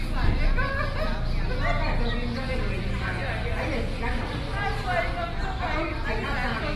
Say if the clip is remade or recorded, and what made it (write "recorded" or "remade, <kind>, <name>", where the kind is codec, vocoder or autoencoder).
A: recorded